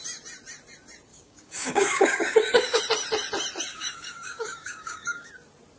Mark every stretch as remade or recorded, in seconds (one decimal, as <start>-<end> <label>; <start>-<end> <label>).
0.0-1.1 recorded; 1.1-2.8 remade; 2.8-3.7 recorded; 3.7-5.3 remade; 5.3-5.8 recorded